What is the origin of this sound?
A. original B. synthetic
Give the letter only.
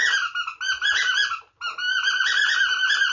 A